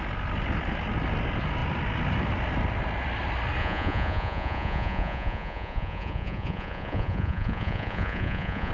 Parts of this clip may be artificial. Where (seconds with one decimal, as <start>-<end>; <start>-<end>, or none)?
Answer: 3.6-8.7